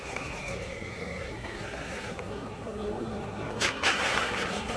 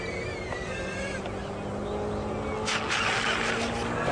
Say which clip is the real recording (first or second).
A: second